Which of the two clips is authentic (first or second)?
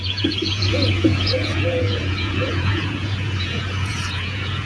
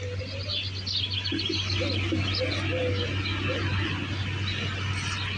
second